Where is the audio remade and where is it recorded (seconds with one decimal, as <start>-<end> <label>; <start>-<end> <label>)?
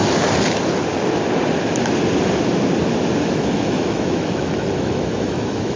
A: 0.0-3.2 recorded; 3.2-5.8 remade